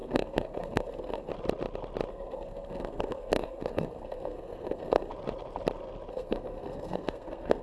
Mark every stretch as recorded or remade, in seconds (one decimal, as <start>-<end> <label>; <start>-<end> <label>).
0.0-1.3 remade; 1.3-2.1 recorded; 2.1-5.1 remade; 5.1-6.1 recorded; 6.1-7.6 remade